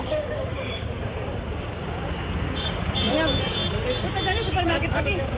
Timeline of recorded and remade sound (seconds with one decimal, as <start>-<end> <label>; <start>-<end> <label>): 0.0-3.6 remade; 3.6-4.3 recorded; 4.3-5.4 remade